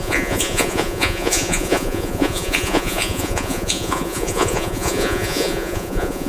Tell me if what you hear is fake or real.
fake